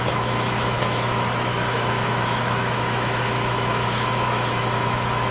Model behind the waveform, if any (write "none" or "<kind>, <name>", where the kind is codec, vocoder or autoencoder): autoencoder, DAC-VAE